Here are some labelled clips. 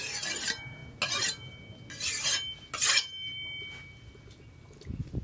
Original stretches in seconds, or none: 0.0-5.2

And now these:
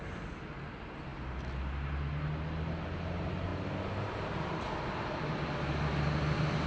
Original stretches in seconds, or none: 0.0-6.7